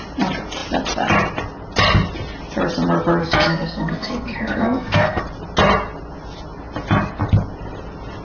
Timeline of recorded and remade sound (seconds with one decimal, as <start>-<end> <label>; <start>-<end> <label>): 0.0-3.2 recorded; 3.2-5.2 remade; 5.2-8.2 recorded